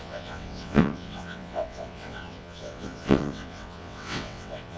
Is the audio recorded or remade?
remade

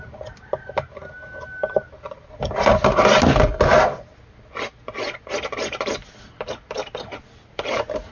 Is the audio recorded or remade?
recorded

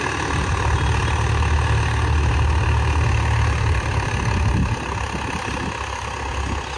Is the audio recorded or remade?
recorded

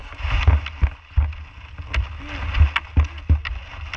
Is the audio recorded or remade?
recorded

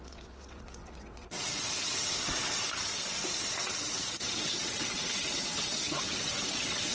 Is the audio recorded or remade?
remade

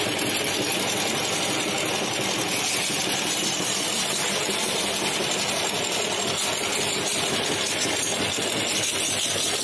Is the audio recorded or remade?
recorded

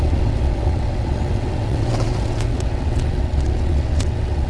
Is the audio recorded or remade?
remade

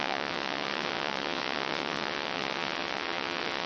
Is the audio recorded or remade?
remade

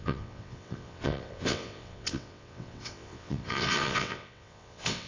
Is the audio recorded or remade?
remade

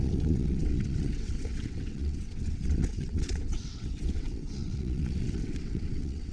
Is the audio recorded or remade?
remade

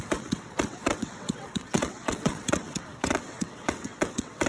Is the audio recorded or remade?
remade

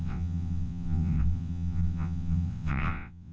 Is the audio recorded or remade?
remade